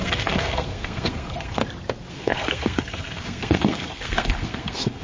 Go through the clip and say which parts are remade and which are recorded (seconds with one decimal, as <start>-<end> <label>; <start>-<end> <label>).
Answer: 0.0-1.6 remade; 1.6-2.1 recorded; 2.1-5.0 remade